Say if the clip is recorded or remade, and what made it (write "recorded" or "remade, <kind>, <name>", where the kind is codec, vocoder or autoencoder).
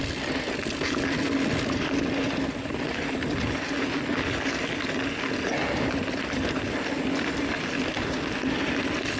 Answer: recorded